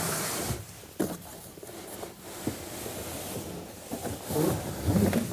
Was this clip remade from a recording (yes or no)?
no